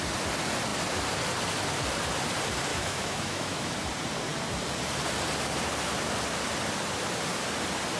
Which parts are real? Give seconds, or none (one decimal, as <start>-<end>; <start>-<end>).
0.0-2.7; 3.7-8.0